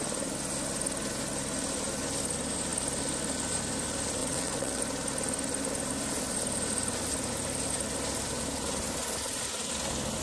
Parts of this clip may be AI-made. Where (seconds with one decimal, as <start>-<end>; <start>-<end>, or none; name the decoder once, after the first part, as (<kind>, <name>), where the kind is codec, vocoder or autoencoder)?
4.2-4.8 (vocoder, WaveNeXt)